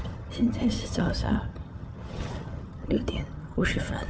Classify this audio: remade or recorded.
remade